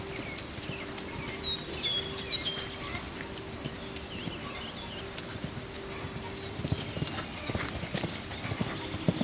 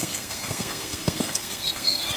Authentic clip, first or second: first